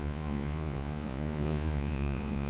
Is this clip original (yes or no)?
no